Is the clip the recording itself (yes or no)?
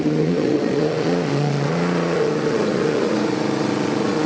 no